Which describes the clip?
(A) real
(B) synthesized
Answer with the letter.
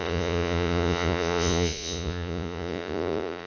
B